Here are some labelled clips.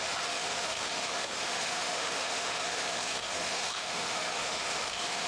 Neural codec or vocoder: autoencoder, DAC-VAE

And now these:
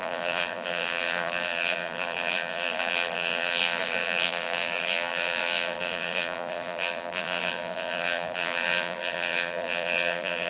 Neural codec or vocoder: vocoder, BigVGAN v2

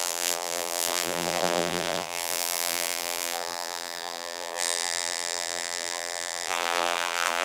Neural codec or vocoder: vocoder, BigVGAN v2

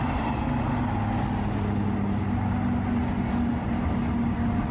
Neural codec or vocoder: none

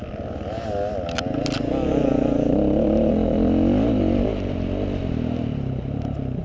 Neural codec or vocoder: none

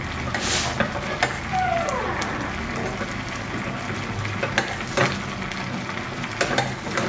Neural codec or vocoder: none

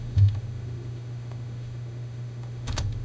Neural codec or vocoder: autoencoder, DAC-VAE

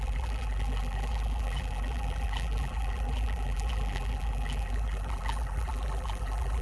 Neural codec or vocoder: vocoder, BigVGAN v2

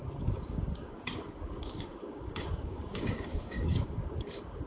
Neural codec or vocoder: codec, DAC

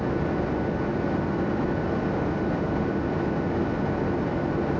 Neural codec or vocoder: none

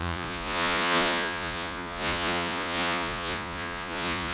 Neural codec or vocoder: vocoder, Vocos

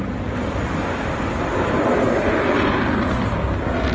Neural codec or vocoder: none